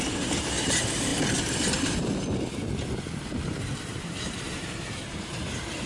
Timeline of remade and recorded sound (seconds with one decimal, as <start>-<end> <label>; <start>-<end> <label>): 0.0-1.1 remade; 1.1-3.2 recorded; 3.2-5.9 remade